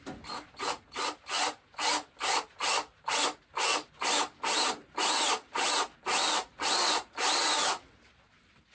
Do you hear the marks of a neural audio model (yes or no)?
no